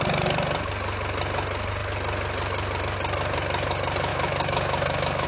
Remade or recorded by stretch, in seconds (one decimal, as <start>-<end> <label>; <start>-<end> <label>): 0.0-4.1 recorded; 4.1-5.3 remade